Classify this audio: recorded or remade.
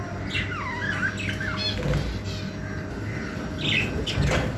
recorded